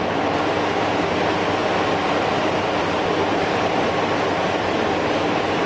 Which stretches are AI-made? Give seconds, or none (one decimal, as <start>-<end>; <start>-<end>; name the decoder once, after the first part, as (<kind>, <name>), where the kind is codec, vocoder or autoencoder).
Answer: 1.6-2.8 (vocoder, BigVGAN v2); 3.2-5.1